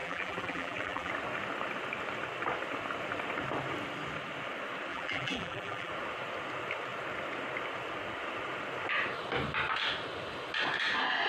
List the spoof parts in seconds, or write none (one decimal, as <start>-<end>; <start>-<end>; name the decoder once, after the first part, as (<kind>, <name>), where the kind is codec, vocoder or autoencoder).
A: 0.0-1.1 (vocoder, BigVGAN v2); 4.9-5.9